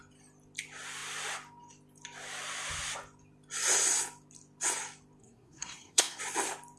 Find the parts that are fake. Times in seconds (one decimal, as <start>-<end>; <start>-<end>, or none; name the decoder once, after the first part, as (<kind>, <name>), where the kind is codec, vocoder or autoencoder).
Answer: 5.2-6.2 (codec, SNAC)